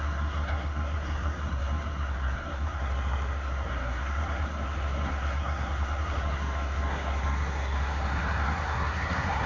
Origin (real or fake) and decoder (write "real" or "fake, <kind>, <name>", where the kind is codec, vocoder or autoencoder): fake, codec, SNAC